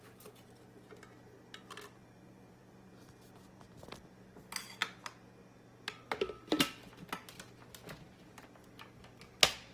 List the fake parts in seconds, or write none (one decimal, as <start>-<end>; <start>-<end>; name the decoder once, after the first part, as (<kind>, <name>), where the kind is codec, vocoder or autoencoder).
2.0-2.9 (vocoder, BigVGAN v2)